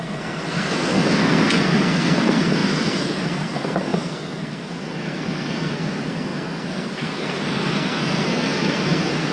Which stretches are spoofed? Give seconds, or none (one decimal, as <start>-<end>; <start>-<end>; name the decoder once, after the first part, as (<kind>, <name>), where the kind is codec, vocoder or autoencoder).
0.0-9.3 (codec, SNAC)

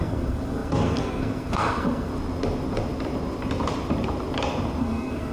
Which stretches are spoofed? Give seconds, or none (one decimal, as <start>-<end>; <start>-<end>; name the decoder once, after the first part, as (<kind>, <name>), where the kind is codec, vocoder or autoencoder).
0.0-2.1 (codec, SNAC); 4.8-5.3

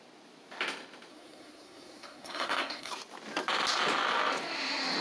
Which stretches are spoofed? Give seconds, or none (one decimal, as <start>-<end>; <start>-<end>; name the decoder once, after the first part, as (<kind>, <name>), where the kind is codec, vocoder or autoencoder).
1.1-2.9 (codec, SNAC)